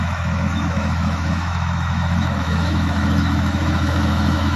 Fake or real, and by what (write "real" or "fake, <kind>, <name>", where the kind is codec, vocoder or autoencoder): fake, autoencoder, DAC-VAE